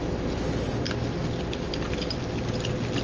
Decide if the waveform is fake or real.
real